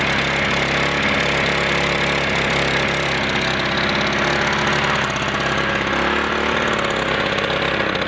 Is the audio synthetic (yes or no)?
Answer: no